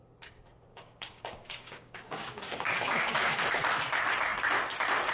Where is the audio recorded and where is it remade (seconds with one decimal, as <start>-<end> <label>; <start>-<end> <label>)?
0.0-0.7 recorded; 0.7-3.4 remade; 3.4-5.1 recorded

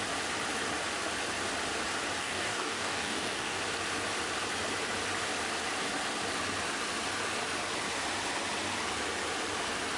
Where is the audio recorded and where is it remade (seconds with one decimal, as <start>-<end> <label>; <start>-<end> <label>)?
0.0-2.2 recorded; 2.2-3.6 remade; 3.6-10.0 recorded

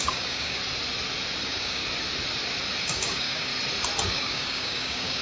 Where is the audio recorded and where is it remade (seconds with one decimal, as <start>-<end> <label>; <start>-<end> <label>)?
0.0-0.6 remade; 0.6-1.4 recorded; 1.4-1.8 remade; 1.8-2.8 recorded; 2.8-3.5 remade; 3.5-4.1 recorded; 4.1-5.2 remade

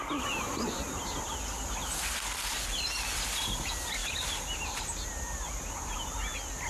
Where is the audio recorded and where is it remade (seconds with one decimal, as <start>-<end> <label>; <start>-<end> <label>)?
0.0-6.7 recorded

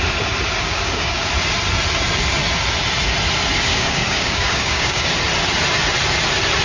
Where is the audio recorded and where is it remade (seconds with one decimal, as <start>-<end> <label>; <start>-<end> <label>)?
0.0-0.6 recorded; 0.6-1.3 remade; 1.3-3.7 recorded; 3.7-5.1 remade; 5.1-6.6 recorded

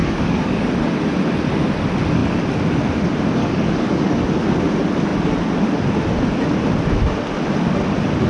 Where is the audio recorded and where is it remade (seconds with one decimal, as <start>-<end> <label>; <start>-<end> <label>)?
0.0-0.7 remade; 0.7-3.4 recorded; 3.4-4.3 remade; 4.3-8.3 recorded

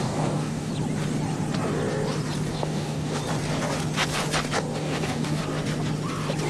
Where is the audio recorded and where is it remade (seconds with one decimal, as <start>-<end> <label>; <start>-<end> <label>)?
0.0-0.7 remade; 0.7-2.5 recorded; 2.5-3.2 remade; 3.2-4.8 recorded; 4.8-5.4 remade; 5.4-6.5 recorded